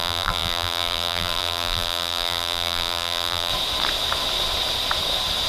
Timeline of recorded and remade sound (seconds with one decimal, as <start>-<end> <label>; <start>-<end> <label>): 0.0-3.5 remade; 3.5-5.5 recorded